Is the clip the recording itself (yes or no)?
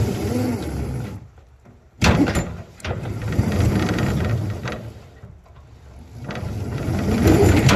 yes